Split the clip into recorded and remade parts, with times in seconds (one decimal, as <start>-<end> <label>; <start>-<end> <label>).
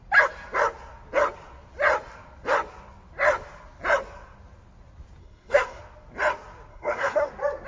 0.0-5.2 recorded; 5.2-5.8 remade; 5.8-6.7 recorded; 6.7-7.3 remade; 7.3-7.7 recorded